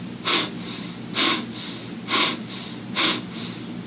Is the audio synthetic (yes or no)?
no